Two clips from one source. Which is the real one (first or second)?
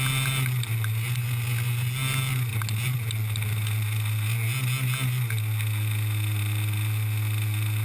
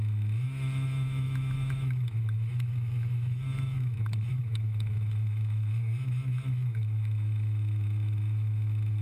first